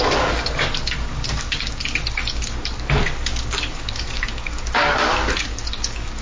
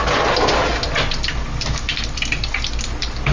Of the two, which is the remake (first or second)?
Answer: first